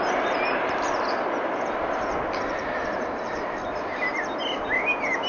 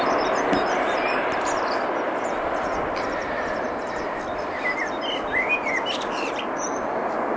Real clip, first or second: first